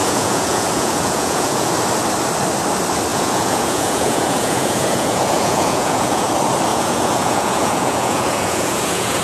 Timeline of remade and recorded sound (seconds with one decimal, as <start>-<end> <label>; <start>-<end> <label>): 0.0-1.7 remade; 1.7-3.1 recorded; 3.1-6.3 remade; 6.3-6.7 recorded; 6.7-9.2 remade